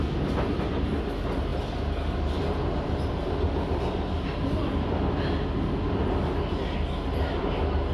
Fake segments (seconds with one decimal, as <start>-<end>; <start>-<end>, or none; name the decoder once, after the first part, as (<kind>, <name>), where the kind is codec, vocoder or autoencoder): none